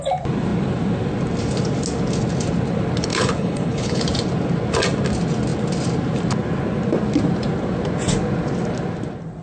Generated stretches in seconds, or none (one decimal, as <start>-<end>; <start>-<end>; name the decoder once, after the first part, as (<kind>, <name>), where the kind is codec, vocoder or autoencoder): 3.1-4.0 (codec, HILCodec)